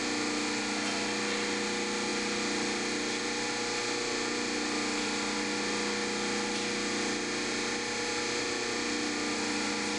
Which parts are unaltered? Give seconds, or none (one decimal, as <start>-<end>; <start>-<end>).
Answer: 0.0-10.0

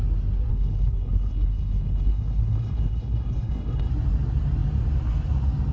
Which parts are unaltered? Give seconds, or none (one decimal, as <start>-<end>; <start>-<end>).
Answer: 0.0-0.5; 3.9-5.7

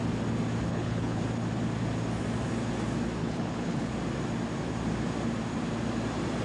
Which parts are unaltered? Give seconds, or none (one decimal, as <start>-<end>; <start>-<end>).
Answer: 0.0-0.7; 1.2-3.2; 3.9-6.4

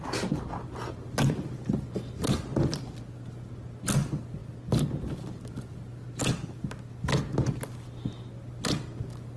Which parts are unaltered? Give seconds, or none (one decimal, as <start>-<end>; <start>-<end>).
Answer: 0.0-9.4

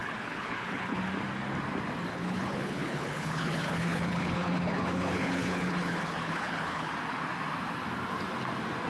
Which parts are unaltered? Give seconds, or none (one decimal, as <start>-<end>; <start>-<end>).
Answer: 1.0-2.1; 6.9-8.9

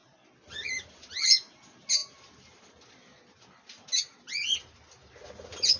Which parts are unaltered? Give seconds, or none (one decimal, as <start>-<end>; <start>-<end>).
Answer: 0.0-5.8